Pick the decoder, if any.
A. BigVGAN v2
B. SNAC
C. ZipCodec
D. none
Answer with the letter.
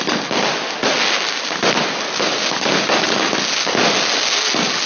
D